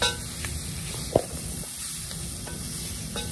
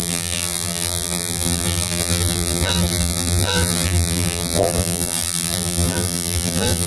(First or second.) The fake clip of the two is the second